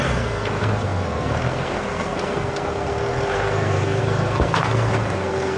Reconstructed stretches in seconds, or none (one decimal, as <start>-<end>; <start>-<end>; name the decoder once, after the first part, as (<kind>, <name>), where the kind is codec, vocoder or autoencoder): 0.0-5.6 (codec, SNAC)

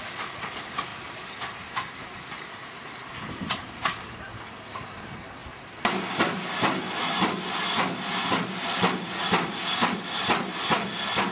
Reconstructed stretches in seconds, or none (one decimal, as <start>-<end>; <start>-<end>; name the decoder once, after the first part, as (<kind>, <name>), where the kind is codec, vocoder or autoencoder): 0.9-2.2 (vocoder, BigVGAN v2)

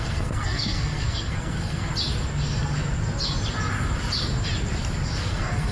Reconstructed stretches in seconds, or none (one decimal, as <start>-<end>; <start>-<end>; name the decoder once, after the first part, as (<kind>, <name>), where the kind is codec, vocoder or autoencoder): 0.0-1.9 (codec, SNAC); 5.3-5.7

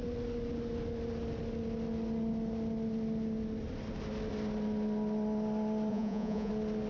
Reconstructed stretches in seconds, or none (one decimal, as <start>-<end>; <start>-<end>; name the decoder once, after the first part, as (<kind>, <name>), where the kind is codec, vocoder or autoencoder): 5.9-6.5 (vocoder, Vocos)